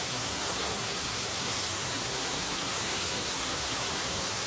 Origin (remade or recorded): remade